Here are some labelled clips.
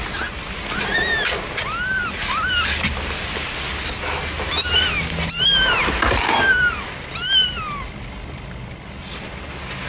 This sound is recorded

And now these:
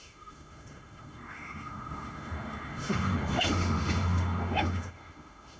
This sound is remade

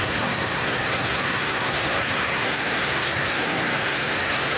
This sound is remade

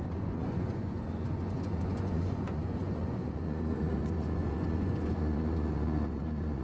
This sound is remade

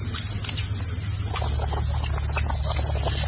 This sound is recorded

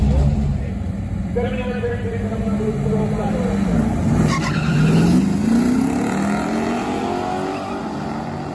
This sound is recorded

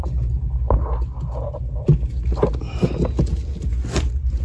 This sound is recorded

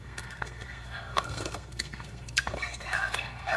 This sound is remade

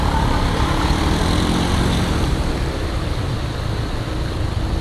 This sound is remade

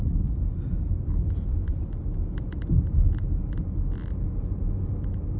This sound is recorded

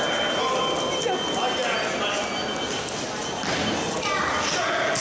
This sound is recorded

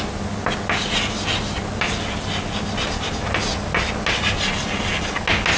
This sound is recorded